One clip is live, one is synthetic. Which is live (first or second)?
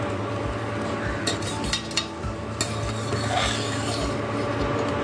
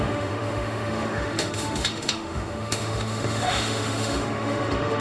first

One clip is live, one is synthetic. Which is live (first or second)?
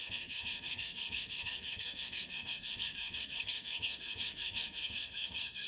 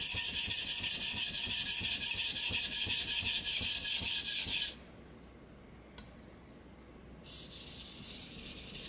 second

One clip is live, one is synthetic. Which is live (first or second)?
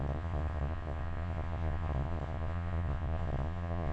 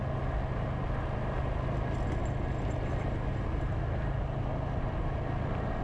second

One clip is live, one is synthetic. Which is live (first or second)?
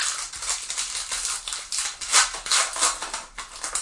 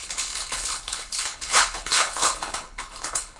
first